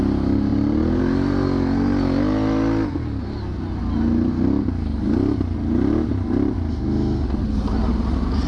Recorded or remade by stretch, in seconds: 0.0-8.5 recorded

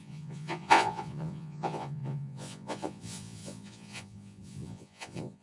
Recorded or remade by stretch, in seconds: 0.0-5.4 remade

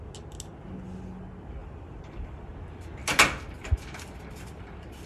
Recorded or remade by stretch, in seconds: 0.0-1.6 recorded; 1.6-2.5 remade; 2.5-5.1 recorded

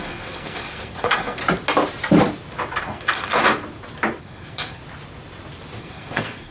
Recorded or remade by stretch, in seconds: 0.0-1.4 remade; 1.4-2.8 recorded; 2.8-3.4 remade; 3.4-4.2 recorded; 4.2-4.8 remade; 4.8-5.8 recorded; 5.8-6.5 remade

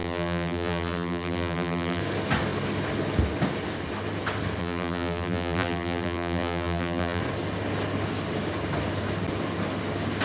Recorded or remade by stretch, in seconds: 0.0-2.0 remade; 2.0-4.6 recorded; 4.6-7.2 remade; 7.2-10.2 recorded

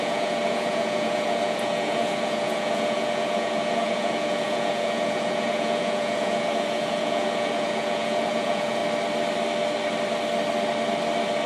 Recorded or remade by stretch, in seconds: 0.0-8.8 remade; 8.8-11.5 recorded

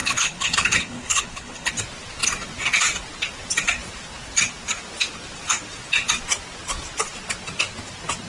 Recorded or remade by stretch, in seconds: 0.0-1.7 remade; 1.7-8.3 recorded

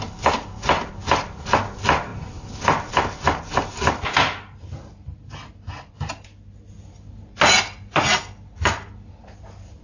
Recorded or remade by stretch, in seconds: 0.0-9.8 recorded